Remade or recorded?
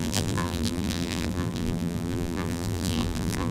remade